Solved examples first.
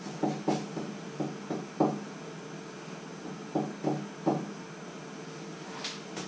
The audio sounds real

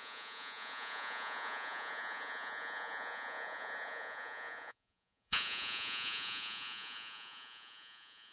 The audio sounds fake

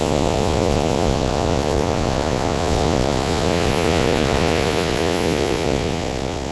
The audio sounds fake